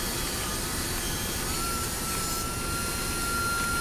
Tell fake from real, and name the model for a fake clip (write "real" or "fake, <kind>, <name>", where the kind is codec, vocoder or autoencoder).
real